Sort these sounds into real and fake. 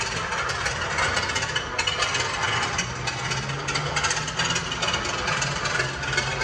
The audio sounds real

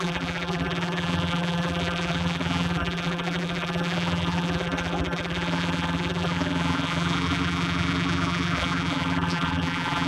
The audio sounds fake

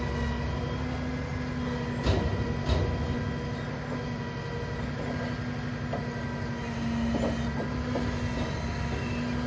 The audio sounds real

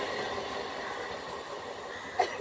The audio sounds real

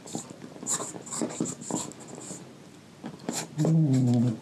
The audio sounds real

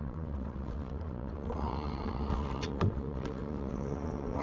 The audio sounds fake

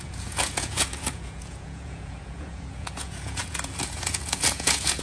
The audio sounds fake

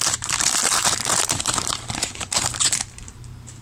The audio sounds fake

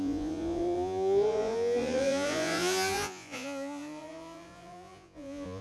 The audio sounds fake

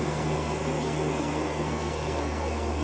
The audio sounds fake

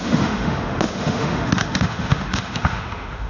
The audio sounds fake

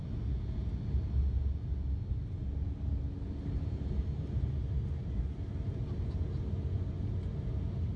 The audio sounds real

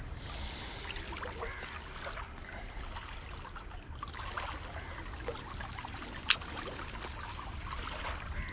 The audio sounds real